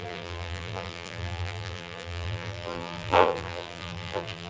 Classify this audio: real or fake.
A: fake